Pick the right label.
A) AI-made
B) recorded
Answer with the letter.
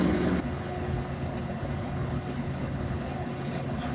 A